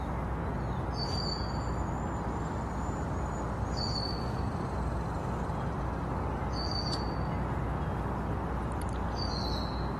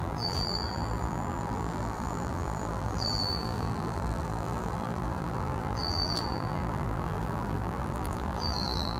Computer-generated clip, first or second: second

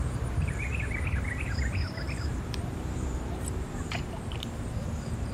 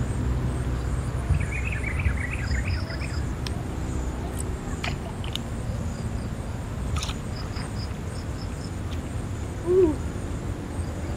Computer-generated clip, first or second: first